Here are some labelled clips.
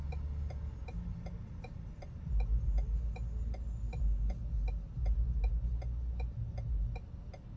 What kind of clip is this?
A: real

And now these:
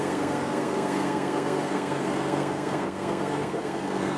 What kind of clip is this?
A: fake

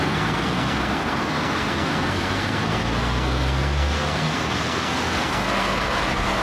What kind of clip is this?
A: fake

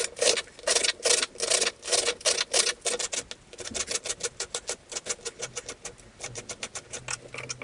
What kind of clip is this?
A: real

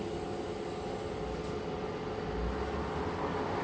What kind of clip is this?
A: real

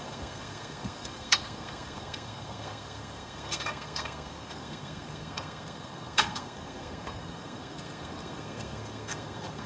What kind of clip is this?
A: fake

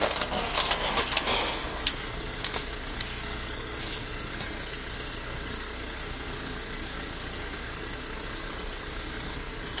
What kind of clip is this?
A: fake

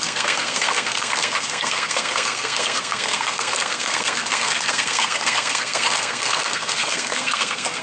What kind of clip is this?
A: fake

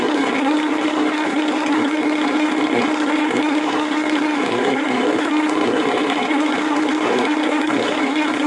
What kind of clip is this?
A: fake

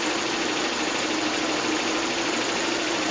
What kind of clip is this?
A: real